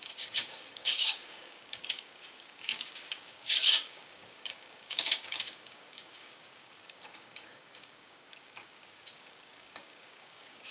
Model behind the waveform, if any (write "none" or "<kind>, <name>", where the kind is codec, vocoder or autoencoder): codec, DAC